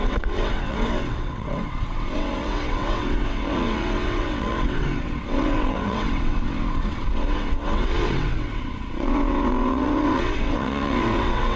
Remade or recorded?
remade